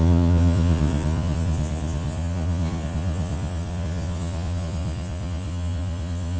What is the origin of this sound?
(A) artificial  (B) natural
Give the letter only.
A